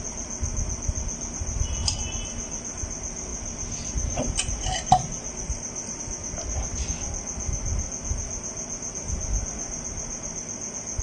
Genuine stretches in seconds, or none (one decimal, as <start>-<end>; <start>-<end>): 0.0-11.0